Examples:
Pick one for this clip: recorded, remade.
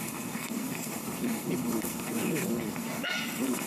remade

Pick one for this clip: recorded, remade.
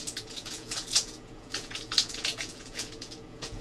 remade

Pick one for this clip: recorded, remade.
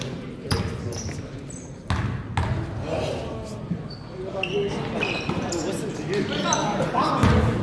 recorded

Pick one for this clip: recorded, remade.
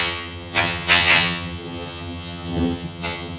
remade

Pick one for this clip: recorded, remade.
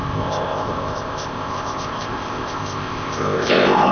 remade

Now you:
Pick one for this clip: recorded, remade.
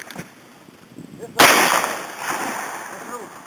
recorded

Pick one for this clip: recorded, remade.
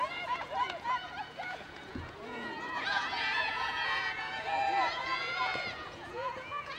remade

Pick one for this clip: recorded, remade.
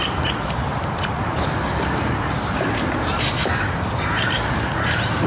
remade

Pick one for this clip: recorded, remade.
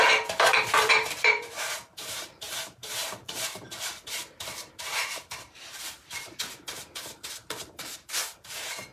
remade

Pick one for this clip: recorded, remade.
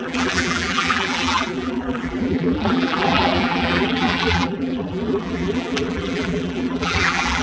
remade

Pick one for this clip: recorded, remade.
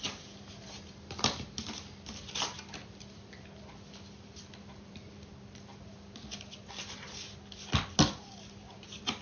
recorded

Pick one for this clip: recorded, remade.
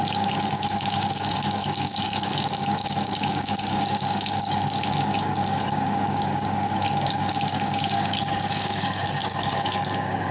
remade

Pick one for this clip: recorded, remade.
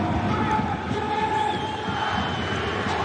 recorded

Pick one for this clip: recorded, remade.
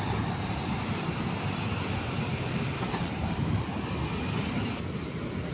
recorded